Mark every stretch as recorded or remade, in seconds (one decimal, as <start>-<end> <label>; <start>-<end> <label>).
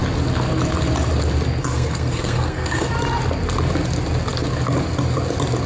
0.0-1.6 recorded; 1.6-2.9 remade; 2.9-5.7 recorded